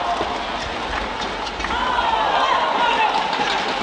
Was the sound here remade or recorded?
recorded